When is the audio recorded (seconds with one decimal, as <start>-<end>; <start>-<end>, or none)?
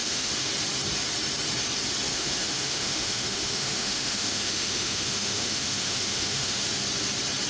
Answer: 0.5-2.1; 6.6-7.5